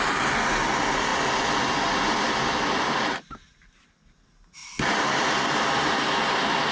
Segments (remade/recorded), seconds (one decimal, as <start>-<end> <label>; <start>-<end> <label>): 0.0-6.7 recorded

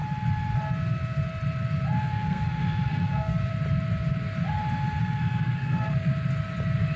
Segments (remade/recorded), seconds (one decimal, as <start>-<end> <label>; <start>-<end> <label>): 0.0-2.0 recorded; 2.0-3.5 remade; 3.5-5.0 recorded; 5.0-6.1 remade; 6.1-7.0 recorded

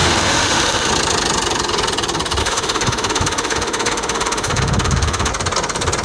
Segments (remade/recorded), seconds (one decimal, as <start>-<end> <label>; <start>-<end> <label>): 0.0-0.9 remade; 0.9-2.4 recorded; 2.4-5.3 remade; 5.3-6.0 recorded

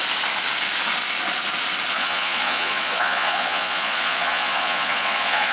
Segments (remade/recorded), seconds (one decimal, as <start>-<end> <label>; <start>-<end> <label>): 0.0-1.9 recorded; 1.9-5.5 remade

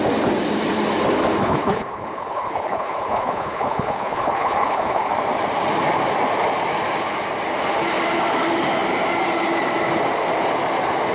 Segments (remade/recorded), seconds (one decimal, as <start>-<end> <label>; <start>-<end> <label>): 0.0-1.4 recorded; 1.4-5.1 remade; 5.1-11.1 recorded

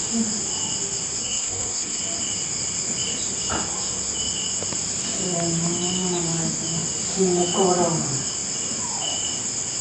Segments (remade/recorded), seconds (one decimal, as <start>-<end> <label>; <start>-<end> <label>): 0.0-1.2 recorded; 1.2-2.0 remade; 2.0-9.8 recorded